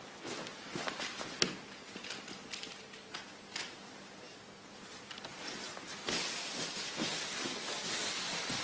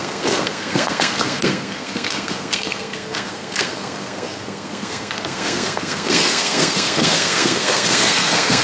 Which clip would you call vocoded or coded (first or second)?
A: second